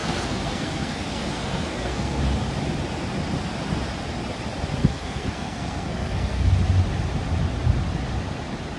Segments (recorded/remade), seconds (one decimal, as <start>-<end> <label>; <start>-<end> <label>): 0.0-2.2 remade; 2.2-4.8 recorded; 4.8-6.5 remade; 6.5-8.8 recorded